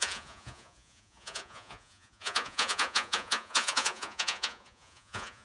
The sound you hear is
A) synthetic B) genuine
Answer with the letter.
A